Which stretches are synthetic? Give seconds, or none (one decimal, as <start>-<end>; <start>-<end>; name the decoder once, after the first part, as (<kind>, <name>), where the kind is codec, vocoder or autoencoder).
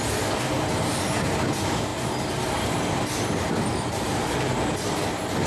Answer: none